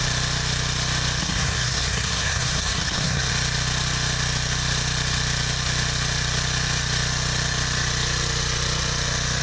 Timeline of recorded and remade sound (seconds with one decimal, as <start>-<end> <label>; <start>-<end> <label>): 0.0-1.2 recorded; 1.2-3.3 remade; 3.3-9.4 recorded